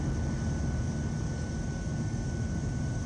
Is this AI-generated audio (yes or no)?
no